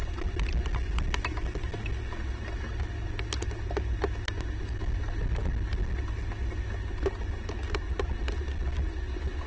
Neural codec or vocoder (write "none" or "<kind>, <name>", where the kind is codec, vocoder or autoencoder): none